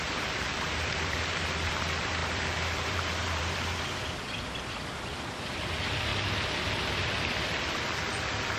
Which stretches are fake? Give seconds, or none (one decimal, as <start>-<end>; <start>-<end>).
0.0-6.1; 7.0-8.6